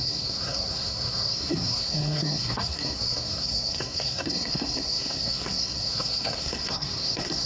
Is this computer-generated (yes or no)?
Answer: yes